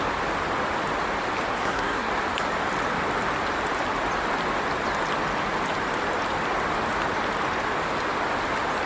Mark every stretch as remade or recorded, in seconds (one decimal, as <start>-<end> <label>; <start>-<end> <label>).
0.0-1.5 recorded; 1.5-2.1 remade; 2.1-8.9 recorded